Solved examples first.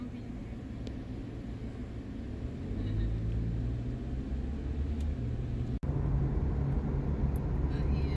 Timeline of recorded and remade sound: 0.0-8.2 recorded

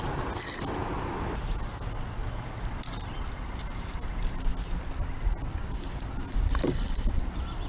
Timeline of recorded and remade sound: 0.0-7.7 recorded

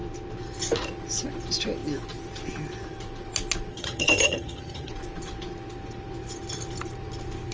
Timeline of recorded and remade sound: 0.0-3.7 recorded; 3.7-4.9 remade; 4.9-7.5 recorded